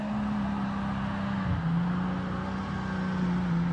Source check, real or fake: real